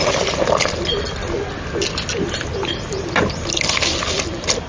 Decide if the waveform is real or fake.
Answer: real